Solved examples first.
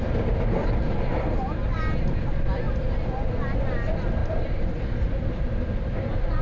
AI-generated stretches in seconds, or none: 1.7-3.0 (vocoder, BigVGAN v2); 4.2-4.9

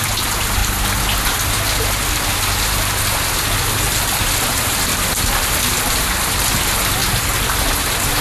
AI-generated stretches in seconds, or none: 0.0-0.6 (vocoder, BigVGAN v2); 4.3-4.9; 5.7-7.0

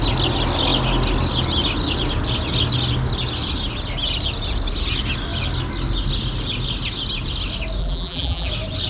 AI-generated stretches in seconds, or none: 7.8-8.5 (vocoder, BigVGAN v2)